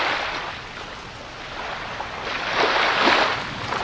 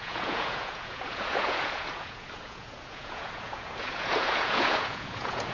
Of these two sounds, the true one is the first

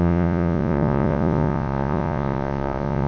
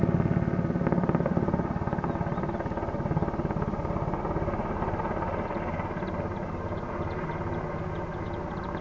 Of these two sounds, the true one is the second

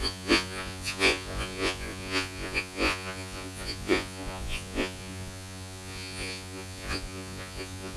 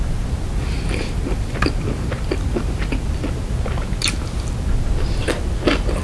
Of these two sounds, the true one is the second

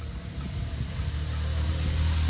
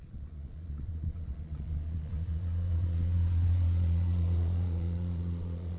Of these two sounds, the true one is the first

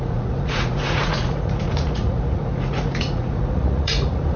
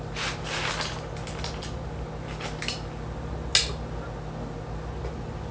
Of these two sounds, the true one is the second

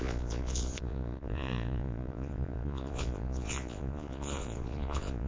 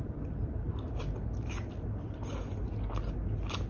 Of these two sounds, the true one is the second